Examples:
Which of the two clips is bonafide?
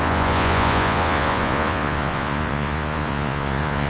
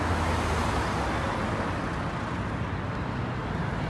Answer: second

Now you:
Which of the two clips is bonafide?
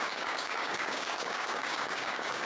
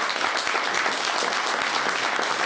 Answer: second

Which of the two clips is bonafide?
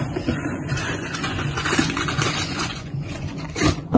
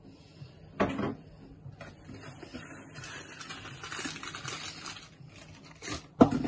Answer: second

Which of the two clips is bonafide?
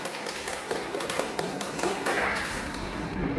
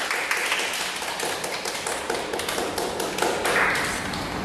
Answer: second